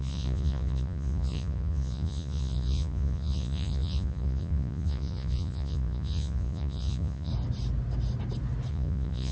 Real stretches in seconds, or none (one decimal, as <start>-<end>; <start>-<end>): 7.3-8.7